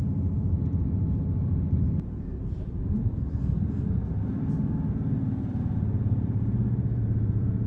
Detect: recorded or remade remade